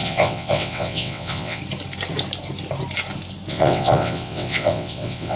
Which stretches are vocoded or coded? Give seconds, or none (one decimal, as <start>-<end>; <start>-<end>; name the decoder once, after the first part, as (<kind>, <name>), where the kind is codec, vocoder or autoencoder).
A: 0.0-1.6 (vocoder, WaveNeXt); 3.5-5.4